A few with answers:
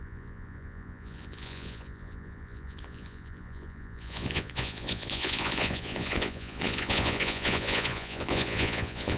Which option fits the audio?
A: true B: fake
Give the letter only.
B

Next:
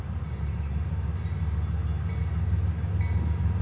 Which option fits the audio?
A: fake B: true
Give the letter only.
B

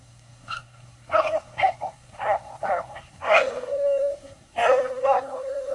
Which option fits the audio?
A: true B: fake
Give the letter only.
B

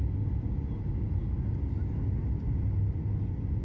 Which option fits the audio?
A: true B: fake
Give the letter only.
A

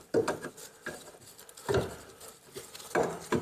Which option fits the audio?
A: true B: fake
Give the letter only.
A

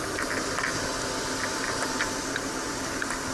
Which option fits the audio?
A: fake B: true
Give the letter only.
B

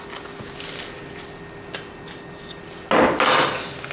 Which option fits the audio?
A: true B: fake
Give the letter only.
A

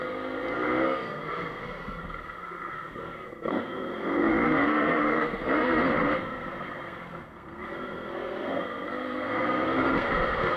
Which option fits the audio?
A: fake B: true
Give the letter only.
A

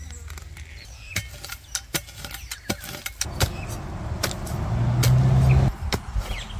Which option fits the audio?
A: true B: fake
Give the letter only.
A